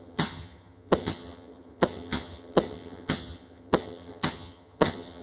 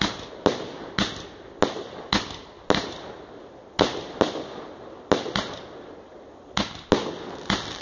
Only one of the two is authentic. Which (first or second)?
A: second